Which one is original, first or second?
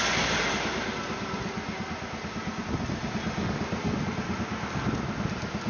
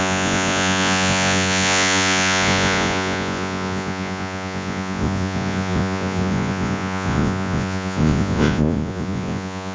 first